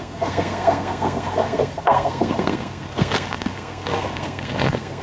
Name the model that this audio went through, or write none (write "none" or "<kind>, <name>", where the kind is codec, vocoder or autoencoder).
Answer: codec, SNAC